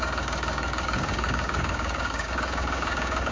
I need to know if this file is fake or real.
fake